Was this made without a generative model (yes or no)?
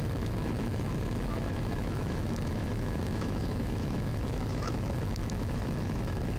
no